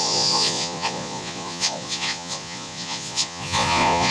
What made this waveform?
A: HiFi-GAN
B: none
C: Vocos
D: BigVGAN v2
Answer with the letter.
C